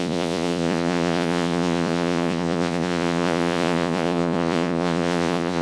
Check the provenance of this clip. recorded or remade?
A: remade